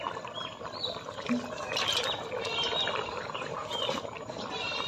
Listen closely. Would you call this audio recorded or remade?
remade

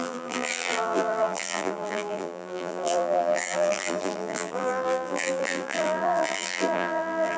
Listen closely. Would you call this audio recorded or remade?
remade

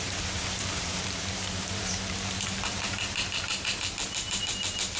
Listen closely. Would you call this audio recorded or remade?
remade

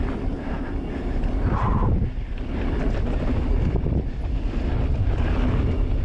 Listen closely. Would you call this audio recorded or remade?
recorded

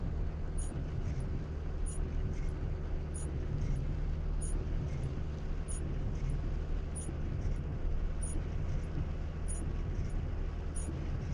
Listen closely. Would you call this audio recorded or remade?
recorded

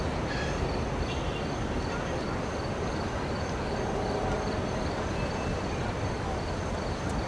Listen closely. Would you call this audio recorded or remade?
remade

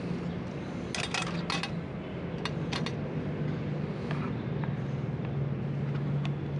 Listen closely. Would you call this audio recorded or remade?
recorded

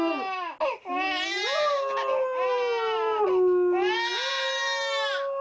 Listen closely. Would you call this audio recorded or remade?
recorded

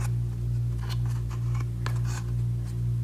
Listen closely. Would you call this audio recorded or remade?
recorded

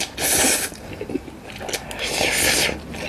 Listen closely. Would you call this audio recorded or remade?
recorded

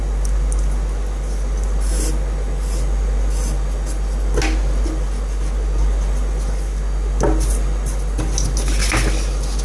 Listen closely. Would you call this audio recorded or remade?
recorded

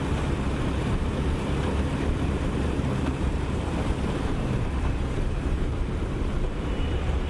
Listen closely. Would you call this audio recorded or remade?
remade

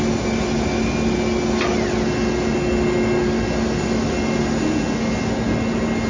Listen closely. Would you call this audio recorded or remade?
recorded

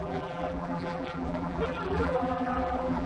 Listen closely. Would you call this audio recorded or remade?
remade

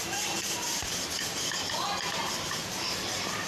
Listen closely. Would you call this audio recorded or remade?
remade